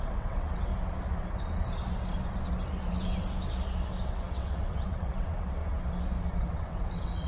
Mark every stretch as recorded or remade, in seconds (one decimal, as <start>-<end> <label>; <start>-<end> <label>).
0.0-0.7 remade; 0.7-4.1 recorded; 4.1-5.6 remade; 5.6-6.4 recorded; 6.4-7.3 remade